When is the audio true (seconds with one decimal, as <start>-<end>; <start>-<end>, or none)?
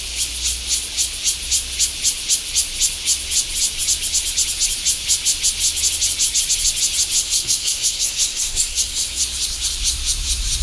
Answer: 0.0-7.2; 9.2-10.6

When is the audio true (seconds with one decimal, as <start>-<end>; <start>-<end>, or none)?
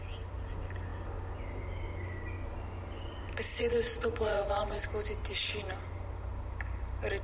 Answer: 0.0-3.5; 4.8-7.2